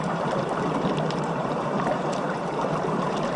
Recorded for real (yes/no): no